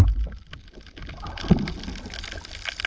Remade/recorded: recorded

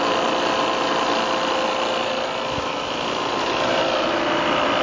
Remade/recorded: recorded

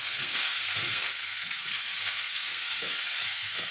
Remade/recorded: remade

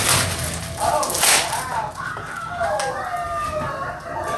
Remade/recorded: recorded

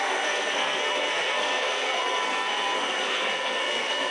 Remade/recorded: remade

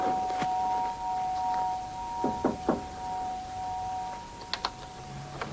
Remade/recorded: recorded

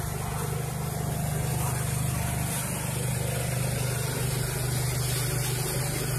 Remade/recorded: recorded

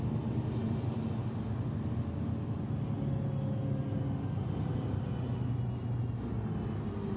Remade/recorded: recorded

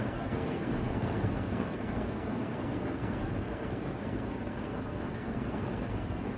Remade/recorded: remade